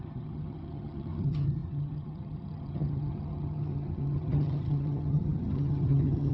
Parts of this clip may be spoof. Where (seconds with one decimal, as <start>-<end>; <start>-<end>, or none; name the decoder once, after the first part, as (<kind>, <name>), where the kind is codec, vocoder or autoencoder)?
0.0-6.3 (vocoder, HiFi-GAN)